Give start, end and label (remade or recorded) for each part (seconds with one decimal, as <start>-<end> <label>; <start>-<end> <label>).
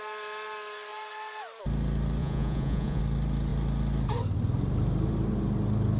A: 0.0-2.2 recorded; 2.2-3.0 remade; 3.0-6.0 recorded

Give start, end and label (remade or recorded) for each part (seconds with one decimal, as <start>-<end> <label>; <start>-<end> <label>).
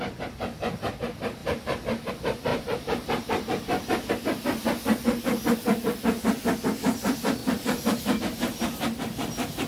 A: 0.0-1.4 recorded; 1.4-2.1 remade; 2.1-2.5 recorded; 2.5-4.1 remade; 4.1-7.4 recorded; 7.4-8.2 remade; 8.2-9.7 recorded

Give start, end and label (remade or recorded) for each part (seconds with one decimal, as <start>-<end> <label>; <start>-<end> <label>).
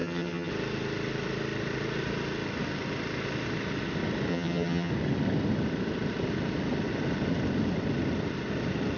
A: 0.0-0.5 remade; 0.5-4.3 recorded; 4.3-4.9 remade; 4.9-9.0 recorded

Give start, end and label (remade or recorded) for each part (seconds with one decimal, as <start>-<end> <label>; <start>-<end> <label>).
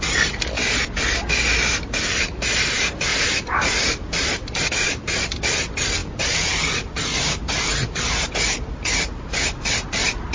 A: 0.0-3.1 recorded; 3.1-5.2 remade; 5.2-10.3 recorded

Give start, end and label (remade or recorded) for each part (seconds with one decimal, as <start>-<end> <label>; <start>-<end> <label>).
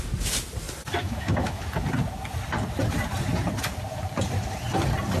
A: 0.0-1.0 recorded; 1.0-1.6 remade; 1.6-5.2 recorded